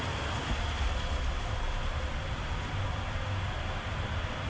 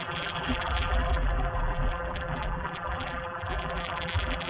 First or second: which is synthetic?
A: second